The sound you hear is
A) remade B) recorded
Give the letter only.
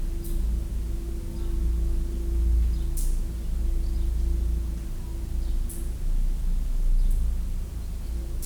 B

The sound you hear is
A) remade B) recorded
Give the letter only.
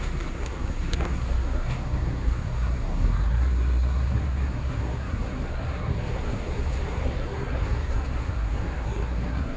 A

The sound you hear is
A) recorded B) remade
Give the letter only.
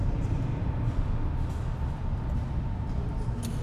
A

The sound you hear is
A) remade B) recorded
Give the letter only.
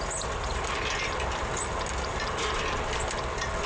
B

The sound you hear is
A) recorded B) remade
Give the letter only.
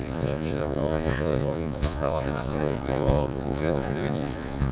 B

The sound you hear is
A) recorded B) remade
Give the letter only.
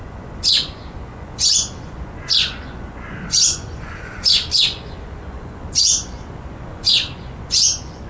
B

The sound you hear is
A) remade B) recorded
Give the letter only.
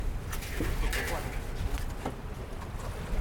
B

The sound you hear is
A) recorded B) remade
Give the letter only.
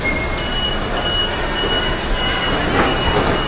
A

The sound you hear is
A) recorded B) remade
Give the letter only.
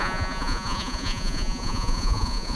B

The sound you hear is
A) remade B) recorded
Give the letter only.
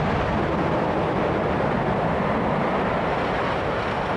B